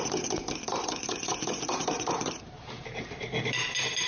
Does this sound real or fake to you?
fake